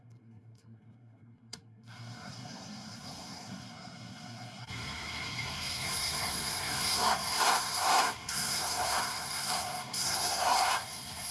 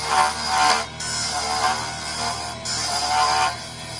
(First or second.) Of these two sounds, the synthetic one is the first